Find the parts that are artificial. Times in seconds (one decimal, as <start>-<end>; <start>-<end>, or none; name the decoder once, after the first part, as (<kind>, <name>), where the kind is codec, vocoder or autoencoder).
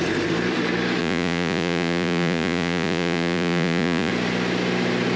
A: 1.0-4.1 (vocoder, Vocos)